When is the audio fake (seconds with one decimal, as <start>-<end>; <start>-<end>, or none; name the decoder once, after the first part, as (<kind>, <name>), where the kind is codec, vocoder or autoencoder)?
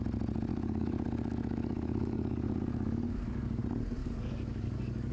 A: 0.5-3.6 (codec, DAC); 4.0-5.1